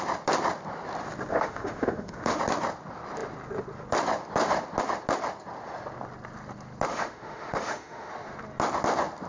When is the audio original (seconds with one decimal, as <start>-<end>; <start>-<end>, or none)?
0.0-1.3; 2.4-6.9; 8.1-9.3